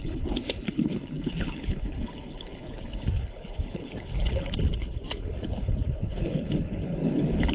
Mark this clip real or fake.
fake